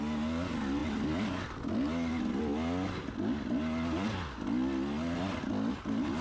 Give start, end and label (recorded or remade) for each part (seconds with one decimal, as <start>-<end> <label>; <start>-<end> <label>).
0.0-6.2 recorded